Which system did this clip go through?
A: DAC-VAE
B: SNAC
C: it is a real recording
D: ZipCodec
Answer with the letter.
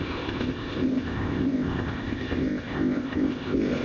D